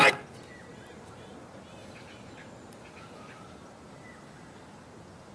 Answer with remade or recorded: recorded